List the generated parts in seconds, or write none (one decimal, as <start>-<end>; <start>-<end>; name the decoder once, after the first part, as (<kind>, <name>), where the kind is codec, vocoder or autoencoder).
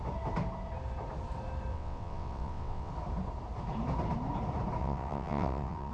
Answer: 1.7-2.9 (vocoder, WaveNeXt); 4.8-5.9